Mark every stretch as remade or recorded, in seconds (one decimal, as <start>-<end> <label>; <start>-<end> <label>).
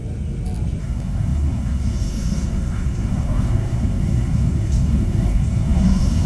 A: 0.0-0.8 recorded; 0.8-6.3 remade